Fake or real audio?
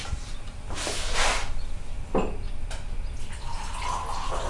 real